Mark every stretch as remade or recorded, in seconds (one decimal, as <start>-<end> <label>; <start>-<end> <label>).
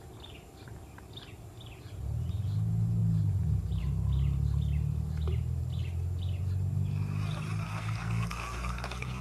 0.0-7.7 recorded; 7.7-9.2 remade